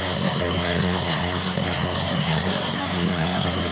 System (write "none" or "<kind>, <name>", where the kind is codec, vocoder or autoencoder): codec, SNAC